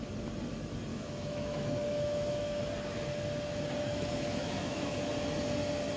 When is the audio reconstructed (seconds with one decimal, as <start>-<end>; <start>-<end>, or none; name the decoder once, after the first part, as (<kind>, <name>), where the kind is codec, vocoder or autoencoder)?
0.9-2.6 (autoencoder, DAC-VAE); 3.9-5.1